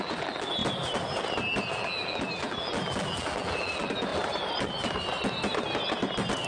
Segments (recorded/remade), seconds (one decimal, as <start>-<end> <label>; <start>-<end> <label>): 0.0-0.6 remade; 0.6-1.7 recorded; 1.7-4.1 remade; 4.1-6.5 recorded